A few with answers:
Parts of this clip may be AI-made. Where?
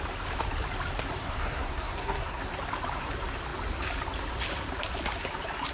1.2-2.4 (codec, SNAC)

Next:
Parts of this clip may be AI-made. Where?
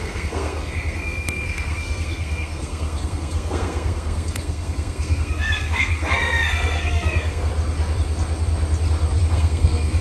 0.0-7.5 (codec, SNAC); 9.3-10.0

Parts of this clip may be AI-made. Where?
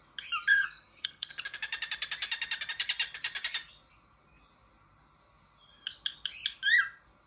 0.5-1.3 (codec, SNAC)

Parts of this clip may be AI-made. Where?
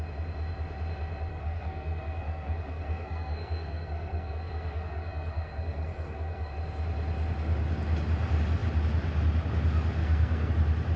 1.3-6.5 (codec, SNAC); 10.0-10.5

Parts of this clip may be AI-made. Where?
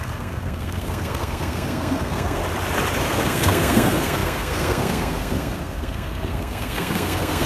0.0-2.4 (codec, SNAC); 3.0-7.5